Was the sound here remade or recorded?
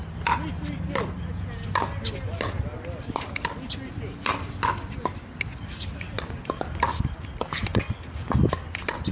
recorded